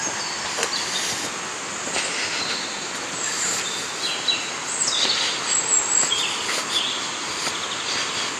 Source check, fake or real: real